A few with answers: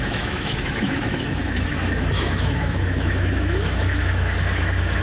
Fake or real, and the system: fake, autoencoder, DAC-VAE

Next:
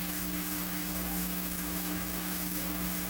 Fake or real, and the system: fake, codec, DAC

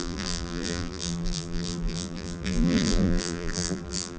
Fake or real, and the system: fake, vocoder, BigVGAN v2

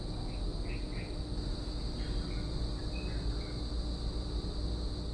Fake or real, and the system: real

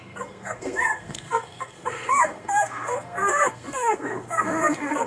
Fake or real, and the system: fake, codec, SNAC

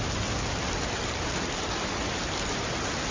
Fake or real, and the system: real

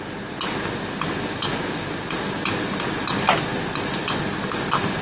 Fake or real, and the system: real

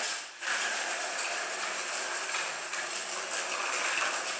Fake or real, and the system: real